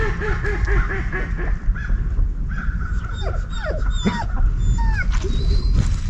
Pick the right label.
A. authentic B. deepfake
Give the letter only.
A